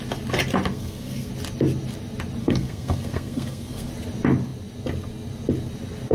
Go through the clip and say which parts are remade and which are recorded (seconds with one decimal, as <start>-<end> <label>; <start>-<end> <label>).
0.0-0.7 recorded; 0.7-1.3 remade; 1.3-2.4 recorded; 2.4-3.9 remade; 3.9-6.1 recorded